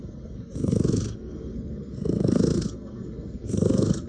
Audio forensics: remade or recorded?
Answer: remade